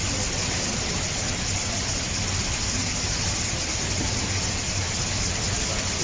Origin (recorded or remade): recorded